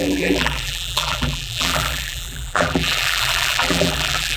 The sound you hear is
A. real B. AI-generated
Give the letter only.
B